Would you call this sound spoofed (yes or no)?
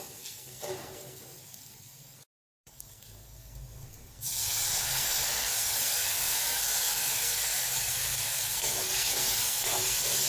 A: yes